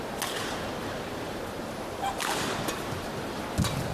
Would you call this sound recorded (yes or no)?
yes